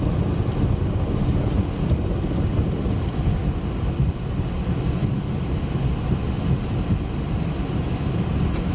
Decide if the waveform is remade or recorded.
recorded